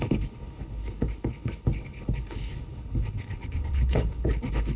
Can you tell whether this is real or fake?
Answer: fake